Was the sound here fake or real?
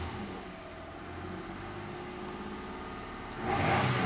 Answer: real